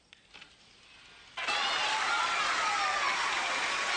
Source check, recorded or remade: recorded